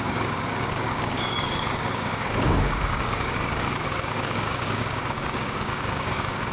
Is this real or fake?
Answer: fake